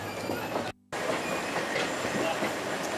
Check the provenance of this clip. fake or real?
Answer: real